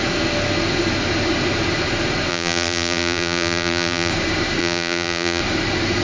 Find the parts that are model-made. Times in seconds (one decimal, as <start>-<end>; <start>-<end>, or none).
2.3-4.1; 4.6-5.4